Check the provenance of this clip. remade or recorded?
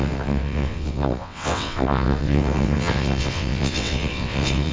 remade